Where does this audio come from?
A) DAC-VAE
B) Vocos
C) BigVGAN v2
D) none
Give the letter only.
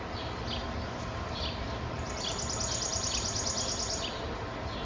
D